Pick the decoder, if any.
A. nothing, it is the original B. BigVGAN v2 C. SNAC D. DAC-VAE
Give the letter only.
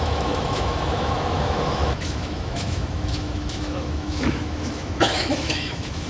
D